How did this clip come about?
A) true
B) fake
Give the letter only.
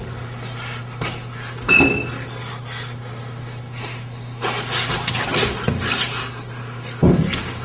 A